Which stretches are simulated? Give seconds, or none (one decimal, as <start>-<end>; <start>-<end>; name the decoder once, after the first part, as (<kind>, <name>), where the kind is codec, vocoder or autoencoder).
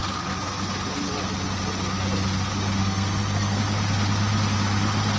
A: 2.8-3.6 (codec, SNAC)